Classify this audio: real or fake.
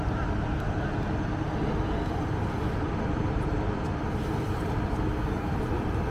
real